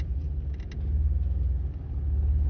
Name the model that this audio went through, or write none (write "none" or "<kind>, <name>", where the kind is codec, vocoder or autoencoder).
none